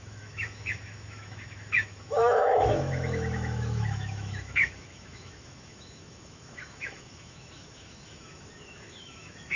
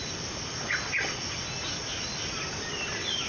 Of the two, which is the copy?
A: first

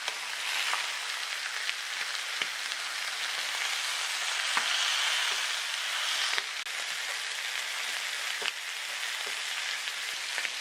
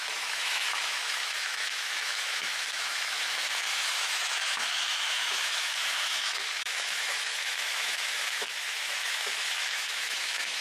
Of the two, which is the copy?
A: second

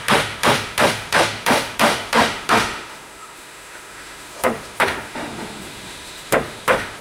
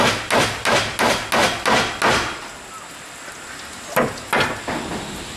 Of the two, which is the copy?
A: first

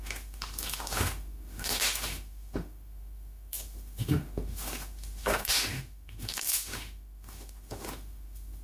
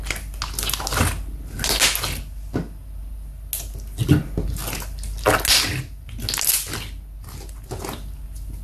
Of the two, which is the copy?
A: first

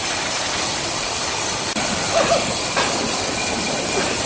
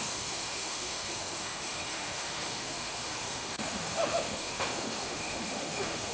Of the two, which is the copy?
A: second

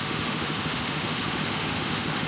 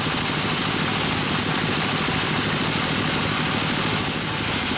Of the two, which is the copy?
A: first